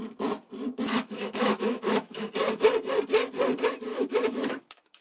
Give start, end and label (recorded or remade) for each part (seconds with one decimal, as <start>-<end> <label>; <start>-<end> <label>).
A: 0.0-1.0 recorded; 1.0-2.2 remade; 2.2-3.9 recorded; 3.9-5.0 remade